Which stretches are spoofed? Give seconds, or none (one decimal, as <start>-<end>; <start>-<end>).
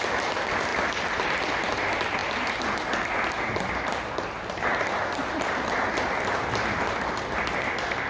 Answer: none